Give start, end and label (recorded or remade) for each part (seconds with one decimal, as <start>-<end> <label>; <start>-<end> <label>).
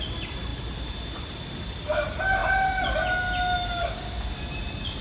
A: 0.0-5.0 recorded